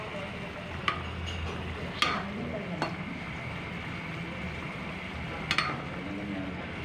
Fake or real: real